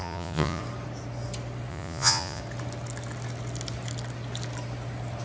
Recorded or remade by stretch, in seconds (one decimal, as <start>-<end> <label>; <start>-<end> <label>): 0.0-0.6 remade; 0.6-1.7 recorded; 1.7-2.4 remade; 2.4-5.2 recorded